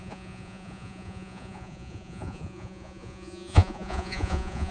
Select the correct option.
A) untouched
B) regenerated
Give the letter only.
B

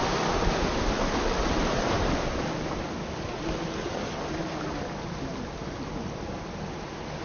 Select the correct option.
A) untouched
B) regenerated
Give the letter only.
A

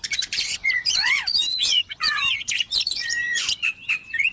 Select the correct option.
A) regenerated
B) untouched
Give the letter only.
A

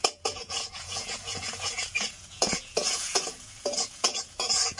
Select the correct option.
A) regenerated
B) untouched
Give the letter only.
A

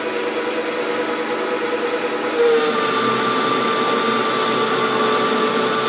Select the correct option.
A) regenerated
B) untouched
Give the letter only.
B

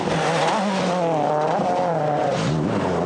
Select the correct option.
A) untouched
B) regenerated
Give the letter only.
A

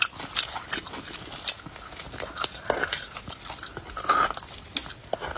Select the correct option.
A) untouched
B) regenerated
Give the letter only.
A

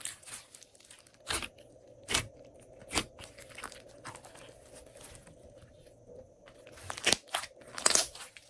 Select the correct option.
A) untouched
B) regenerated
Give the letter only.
A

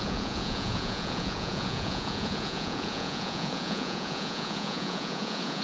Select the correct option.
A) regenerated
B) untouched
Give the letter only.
A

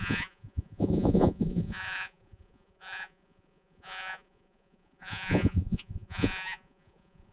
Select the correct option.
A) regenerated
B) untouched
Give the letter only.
A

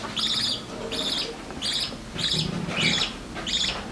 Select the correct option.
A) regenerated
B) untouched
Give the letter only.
B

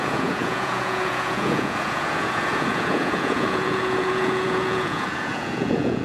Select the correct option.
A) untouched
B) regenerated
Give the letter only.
B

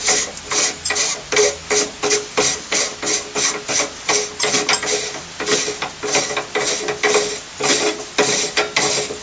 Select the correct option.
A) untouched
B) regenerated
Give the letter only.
A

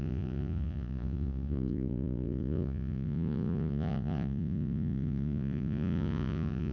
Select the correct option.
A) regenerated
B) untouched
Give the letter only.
A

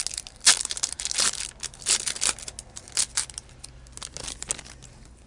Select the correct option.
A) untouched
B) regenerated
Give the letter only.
A